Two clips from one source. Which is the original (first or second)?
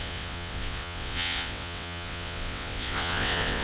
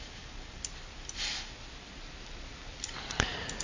second